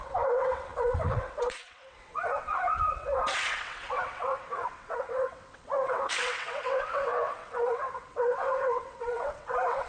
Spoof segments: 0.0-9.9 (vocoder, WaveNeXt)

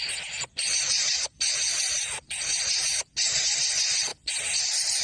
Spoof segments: none

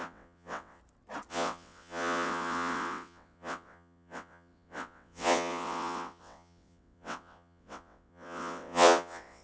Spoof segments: 0.0-0.8 (vocoder, WaveNeXt); 1.3-9.4

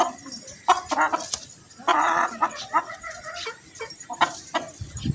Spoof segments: 1.9-3.2 (vocoder, WaveNeXt)

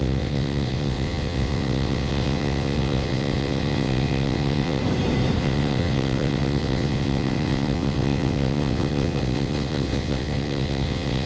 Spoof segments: 0.0-4.8 (vocoder, WaveNeXt); 5.4-11.3

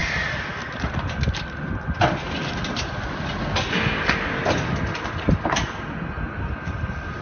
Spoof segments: none